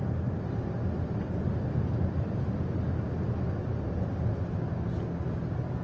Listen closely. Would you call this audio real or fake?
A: real